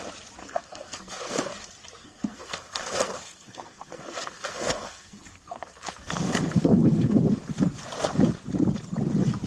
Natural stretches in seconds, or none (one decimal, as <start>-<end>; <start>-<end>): 0.0-0.4; 1.6-2.0; 7.2-9.5